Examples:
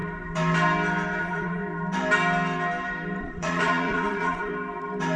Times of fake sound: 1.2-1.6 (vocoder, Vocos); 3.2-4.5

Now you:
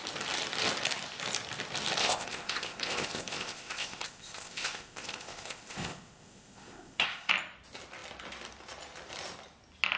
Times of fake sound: 2.0-7.3 (codec, ZipCodec)

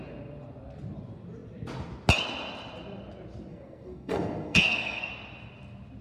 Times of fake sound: 3.5-5.1 (codec, SNAC)

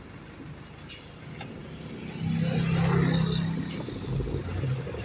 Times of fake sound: none

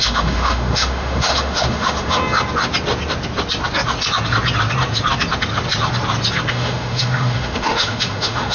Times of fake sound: 0.0-2.2 (autoencoder, DAC-VAE); 6.5-8.5

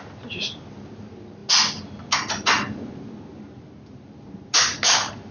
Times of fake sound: none

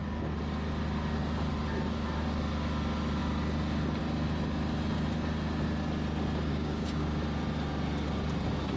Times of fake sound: 6.5-7.2 (codec, DAC)

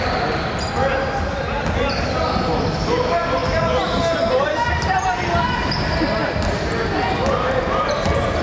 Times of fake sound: none